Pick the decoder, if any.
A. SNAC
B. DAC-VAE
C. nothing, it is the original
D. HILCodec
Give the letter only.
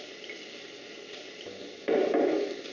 C